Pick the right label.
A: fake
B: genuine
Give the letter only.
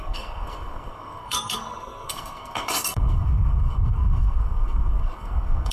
A